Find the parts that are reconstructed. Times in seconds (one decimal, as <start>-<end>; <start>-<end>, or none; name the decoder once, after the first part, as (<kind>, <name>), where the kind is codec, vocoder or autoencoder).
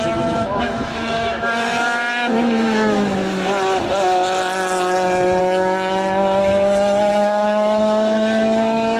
0.0-3.2 (autoencoder, DAC-VAE); 5.4-9.0